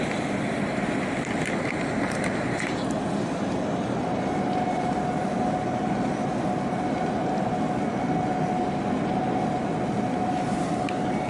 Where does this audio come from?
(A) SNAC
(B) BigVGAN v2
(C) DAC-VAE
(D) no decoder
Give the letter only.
D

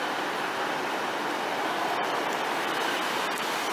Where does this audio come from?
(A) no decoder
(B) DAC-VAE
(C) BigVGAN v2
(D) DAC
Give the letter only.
A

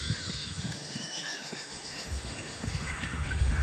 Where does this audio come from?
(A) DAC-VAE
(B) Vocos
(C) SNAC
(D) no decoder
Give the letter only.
A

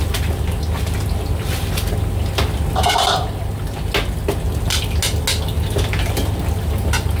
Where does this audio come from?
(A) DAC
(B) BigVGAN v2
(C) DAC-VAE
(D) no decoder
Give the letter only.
D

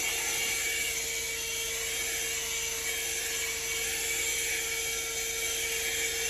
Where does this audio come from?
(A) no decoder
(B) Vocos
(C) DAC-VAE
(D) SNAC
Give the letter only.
A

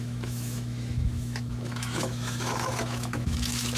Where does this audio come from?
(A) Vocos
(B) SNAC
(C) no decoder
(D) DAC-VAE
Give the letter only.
D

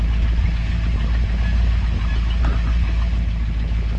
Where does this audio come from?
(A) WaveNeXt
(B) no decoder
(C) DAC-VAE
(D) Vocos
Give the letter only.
B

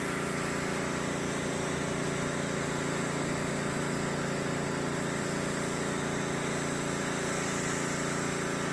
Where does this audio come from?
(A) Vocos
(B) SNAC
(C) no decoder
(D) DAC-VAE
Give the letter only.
C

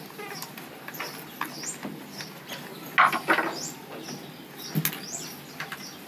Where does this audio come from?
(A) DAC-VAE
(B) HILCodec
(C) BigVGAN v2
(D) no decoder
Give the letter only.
D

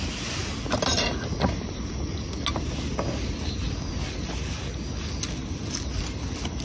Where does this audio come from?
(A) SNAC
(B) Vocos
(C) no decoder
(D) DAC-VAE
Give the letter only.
C